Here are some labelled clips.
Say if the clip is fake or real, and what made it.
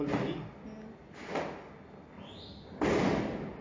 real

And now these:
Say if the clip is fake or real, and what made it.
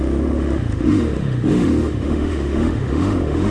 fake, autoencoder, DAC-VAE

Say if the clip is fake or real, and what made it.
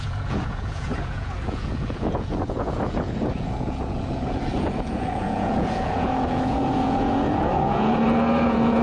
fake, vocoder, Vocos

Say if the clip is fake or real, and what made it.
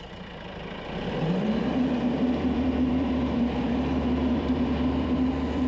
fake, vocoder, BigVGAN v2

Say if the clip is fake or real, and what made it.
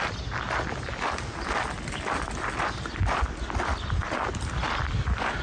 real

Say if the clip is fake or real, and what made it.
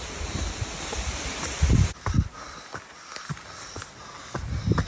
real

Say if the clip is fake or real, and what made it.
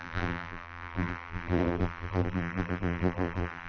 fake, vocoder, BigVGAN v2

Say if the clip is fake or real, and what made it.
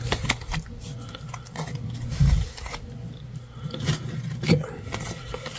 real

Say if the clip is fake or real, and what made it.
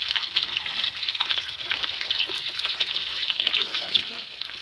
fake, codec, SNAC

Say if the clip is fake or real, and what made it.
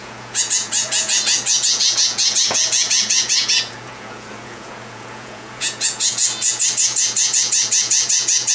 fake, vocoder, Vocos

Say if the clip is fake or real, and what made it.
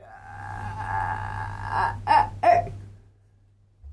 real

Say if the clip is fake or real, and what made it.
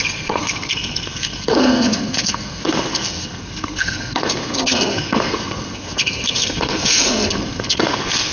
fake, codec, SNAC